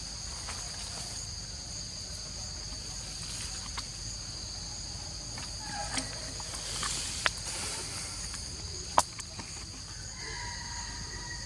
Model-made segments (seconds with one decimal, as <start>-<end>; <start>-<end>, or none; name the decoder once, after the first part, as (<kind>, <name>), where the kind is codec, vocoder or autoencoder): 9.0-10.2 (vocoder, BigVGAN v2)

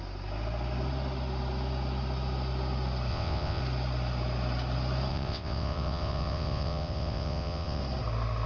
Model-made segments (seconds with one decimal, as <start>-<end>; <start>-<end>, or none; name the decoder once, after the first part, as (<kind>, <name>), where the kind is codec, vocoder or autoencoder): 3.1-3.6 (vocoder, WaveNeXt); 5.1-7.8